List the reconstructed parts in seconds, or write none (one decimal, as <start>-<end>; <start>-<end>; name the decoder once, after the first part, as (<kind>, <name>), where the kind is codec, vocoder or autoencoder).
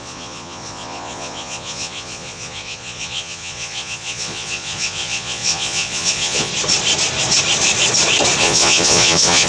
0.0-6.5 (vocoder, Vocos); 8.4-9.5